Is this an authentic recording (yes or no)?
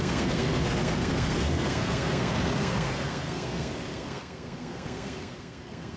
no